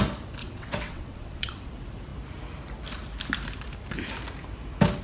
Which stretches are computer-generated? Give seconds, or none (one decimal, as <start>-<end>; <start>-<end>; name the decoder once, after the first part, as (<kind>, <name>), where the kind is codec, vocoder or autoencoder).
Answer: 0.4-1.7 (vocoder, WaveNeXt)

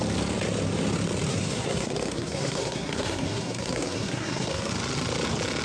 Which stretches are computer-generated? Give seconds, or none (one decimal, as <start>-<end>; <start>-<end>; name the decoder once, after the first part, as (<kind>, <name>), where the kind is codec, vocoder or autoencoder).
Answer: 1.3-4.7 (codec, SNAC)

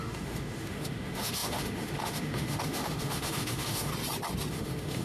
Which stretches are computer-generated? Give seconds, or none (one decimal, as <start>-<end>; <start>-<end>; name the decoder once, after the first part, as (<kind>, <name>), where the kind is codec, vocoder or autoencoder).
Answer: 0.0-3.9 (autoencoder, DAC-VAE); 4.5-5.0

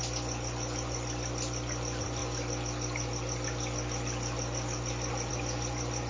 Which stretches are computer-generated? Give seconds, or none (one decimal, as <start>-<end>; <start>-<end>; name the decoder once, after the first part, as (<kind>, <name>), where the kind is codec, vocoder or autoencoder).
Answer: none

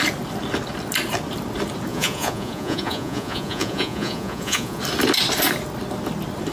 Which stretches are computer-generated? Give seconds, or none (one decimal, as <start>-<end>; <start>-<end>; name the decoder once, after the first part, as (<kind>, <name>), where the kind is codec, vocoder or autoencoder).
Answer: 1.9-4.8 (vocoder, Vocos)

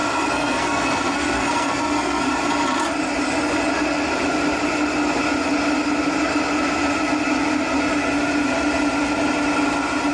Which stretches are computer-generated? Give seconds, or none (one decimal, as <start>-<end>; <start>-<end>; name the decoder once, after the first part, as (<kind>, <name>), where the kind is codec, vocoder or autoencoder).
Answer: 0.0-2.2 (codec, SNAC)

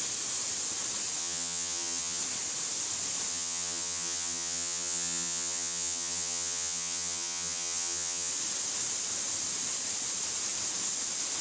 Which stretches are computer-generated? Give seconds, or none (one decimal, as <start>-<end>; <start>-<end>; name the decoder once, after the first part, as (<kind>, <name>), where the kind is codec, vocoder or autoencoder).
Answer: 1.2-2.2 (vocoder, HiFi-GAN); 3.3-8.3

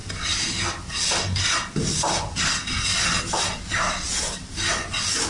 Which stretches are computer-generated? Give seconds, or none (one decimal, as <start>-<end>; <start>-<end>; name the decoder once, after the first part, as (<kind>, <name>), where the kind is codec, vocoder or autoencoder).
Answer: none